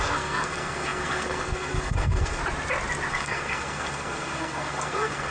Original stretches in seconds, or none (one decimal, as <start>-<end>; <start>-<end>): 2.4-3.1